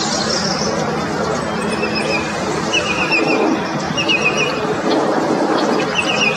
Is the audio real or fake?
real